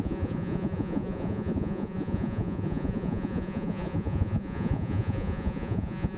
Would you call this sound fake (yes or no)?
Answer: yes